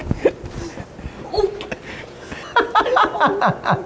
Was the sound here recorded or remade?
recorded